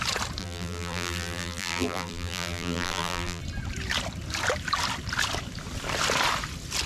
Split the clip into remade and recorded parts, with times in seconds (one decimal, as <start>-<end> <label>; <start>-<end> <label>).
0.0-0.4 recorded; 0.4-3.4 remade; 3.4-6.9 recorded